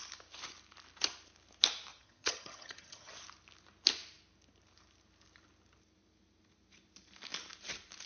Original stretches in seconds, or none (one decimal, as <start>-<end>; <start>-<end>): 0.0-1.9; 3.1-8.1